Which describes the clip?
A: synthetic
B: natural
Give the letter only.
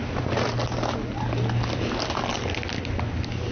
B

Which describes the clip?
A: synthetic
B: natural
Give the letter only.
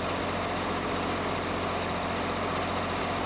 B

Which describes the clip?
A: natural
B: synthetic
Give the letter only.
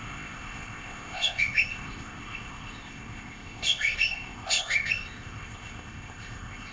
B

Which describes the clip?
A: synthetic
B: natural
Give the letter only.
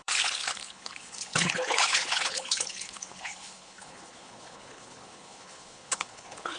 A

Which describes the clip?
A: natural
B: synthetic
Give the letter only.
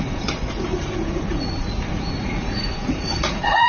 B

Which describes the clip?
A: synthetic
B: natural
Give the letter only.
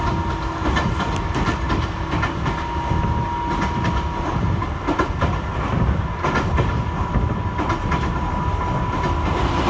B